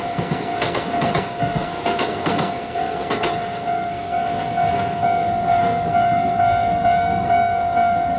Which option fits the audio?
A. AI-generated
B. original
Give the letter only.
A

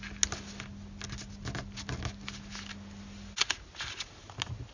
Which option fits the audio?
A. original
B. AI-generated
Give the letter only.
A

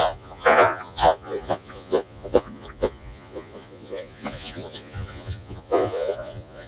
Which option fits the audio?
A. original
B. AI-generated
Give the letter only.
B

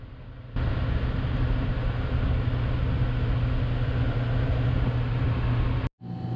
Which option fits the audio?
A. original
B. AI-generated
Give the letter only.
A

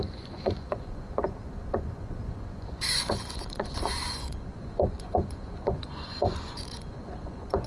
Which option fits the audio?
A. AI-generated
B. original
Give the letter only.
A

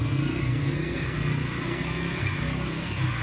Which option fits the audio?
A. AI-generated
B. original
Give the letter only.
A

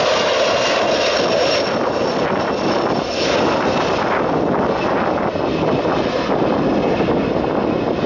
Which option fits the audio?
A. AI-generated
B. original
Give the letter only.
B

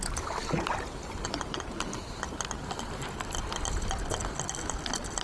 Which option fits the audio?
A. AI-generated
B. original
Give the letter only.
B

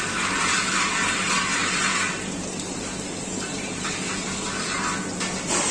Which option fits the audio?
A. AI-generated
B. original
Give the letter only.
B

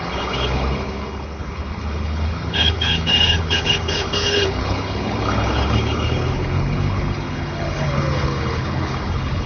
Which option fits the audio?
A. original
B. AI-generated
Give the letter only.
B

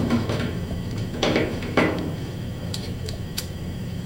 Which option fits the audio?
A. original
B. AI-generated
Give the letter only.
B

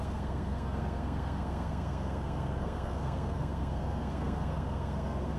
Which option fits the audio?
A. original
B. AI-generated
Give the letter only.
B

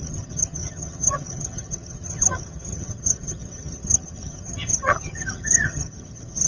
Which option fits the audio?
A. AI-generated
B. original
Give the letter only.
A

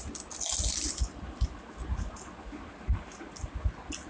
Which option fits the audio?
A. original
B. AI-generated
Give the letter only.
A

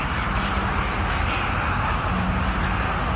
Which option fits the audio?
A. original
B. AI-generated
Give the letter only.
A